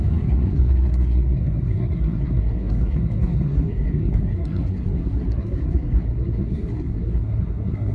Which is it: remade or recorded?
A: remade